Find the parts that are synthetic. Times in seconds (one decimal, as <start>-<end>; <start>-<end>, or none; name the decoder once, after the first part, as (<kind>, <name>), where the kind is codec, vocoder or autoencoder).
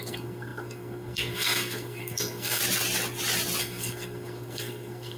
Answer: 0.0-2.6 (codec, SNAC); 3.6-5.2